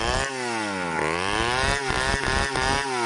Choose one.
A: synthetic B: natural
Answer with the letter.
B